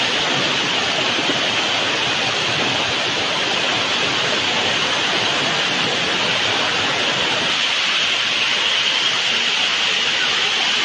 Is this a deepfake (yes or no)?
no